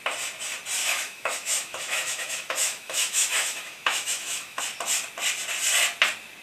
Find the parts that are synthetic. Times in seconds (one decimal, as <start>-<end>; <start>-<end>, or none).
0.8-4.6

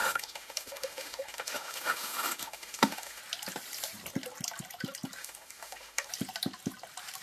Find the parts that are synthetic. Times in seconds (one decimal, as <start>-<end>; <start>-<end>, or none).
0.0-3.2; 5.2-6.1

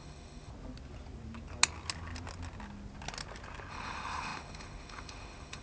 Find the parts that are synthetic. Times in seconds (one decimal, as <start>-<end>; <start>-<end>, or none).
0.0-0.5; 3.7-5.6

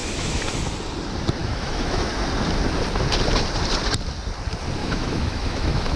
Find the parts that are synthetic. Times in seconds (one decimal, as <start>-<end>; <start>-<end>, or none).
0.0-0.6; 1.4-2.1; 4.8-6.0

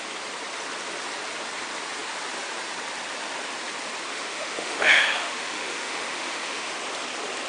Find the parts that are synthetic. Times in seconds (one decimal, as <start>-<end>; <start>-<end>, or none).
4.1-6.7

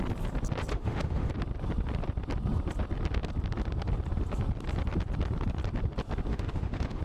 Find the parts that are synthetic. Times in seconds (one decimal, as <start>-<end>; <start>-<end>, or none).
0.7-1.3; 6.3-7.0

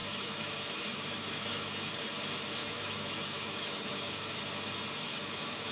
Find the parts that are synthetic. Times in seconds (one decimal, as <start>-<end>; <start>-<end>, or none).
0.0-1.9; 2.6-4.4; 5.1-5.7